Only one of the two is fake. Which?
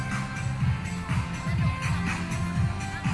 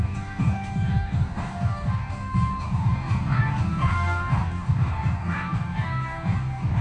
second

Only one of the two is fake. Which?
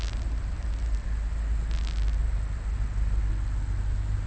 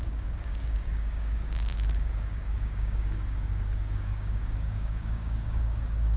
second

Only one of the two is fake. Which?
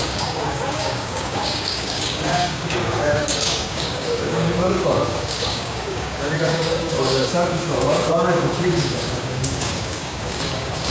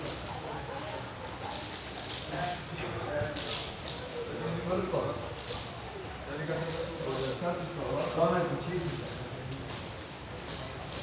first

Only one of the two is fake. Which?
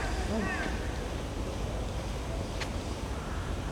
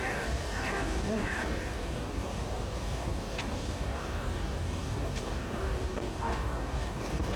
second